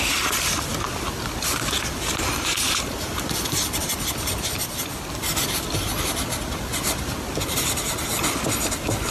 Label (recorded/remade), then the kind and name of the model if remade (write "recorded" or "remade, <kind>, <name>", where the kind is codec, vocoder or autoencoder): recorded